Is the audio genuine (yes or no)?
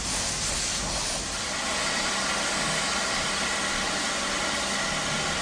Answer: yes